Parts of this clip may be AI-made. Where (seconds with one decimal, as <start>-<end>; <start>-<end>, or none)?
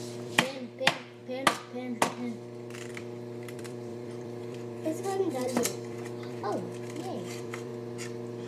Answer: 0.0-1.2; 2.9-7.7